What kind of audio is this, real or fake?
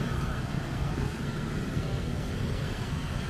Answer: fake